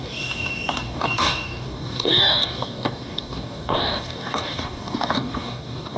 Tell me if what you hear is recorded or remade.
remade